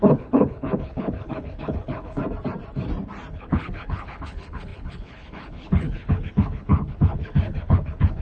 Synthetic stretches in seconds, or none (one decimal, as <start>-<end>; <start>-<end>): 0.0-2.2; 3.3-8.2